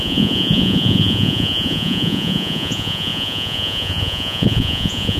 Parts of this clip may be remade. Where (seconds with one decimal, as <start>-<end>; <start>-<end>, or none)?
0.0-5.2